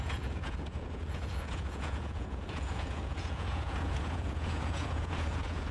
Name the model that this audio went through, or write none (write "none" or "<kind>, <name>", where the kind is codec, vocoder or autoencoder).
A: vocoder, Vocos